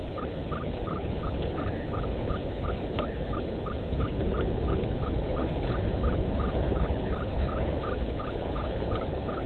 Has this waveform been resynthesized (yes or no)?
yes